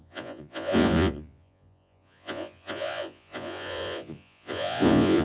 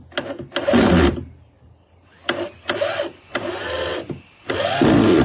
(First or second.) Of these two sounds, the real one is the second